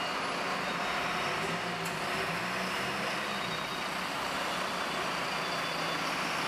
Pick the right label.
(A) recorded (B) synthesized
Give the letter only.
A